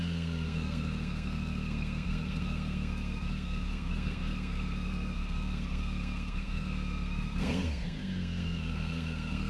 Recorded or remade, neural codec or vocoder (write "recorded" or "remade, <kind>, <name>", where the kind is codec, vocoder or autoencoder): remade, codec, SNAC